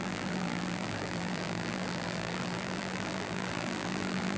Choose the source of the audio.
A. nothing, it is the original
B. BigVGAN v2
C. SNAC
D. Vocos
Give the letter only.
B